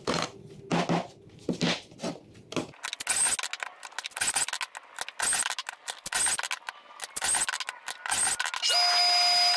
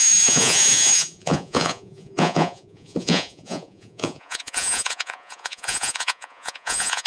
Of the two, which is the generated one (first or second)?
second